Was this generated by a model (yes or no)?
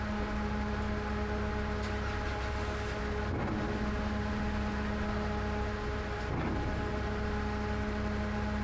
no